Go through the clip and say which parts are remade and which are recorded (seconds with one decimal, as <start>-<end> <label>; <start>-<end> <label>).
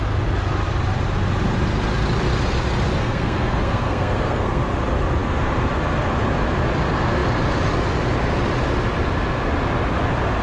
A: 0.0-3.0 recorded; 3.0-4.6 remade; 4.6-10.4 recorded